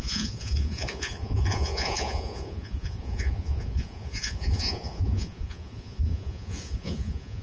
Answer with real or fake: fake